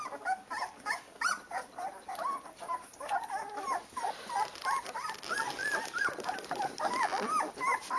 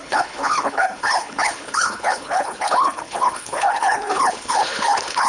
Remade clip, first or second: second